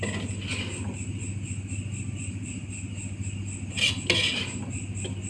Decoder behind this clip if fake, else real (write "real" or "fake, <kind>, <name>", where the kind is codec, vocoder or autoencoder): real